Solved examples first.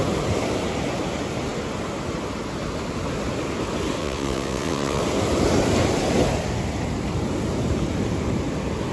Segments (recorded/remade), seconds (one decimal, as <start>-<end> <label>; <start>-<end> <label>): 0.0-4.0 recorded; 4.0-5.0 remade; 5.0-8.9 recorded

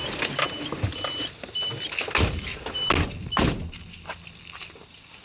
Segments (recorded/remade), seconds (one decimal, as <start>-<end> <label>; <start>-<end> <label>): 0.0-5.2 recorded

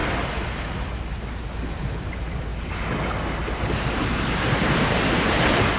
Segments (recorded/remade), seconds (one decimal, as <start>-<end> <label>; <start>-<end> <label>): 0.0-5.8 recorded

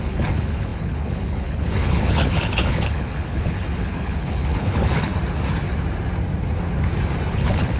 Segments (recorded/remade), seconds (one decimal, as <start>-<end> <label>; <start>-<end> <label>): 0.0-5.1 remade; 5.1-7.3 recorded; 7.3-7.8 remade

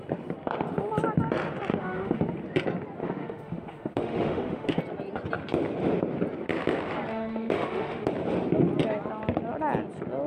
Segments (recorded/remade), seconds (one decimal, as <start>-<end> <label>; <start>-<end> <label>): 0.0-1.7 recorded; 1.7-2.2 remade; 2.2-3.0 recorded; 3.0-4.8 remade; 4.8-7.1 recorded; 7.1-8.1 remade; 8.1-10.3 recorded

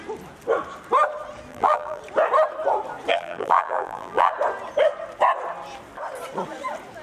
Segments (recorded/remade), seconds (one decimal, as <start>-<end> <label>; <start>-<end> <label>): 0.0-1.5 recorded; 1.5-2.0 remade; 2.0-3.1 recorded; 3.1-4.3 remade; 4.3-7.0 recorded